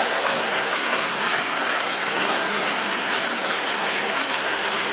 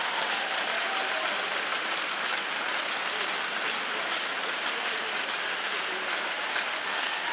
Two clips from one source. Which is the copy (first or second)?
first